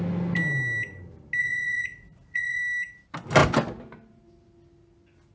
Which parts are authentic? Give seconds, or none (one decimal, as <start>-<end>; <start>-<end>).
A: 0.0-1.4; 2.6-5.3